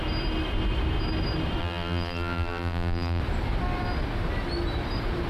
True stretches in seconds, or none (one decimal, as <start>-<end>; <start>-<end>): 0.0-1.6; 3.2-5.3